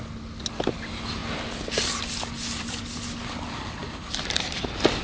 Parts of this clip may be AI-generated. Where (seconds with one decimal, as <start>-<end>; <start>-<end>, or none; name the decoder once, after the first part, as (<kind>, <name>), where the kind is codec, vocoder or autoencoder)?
none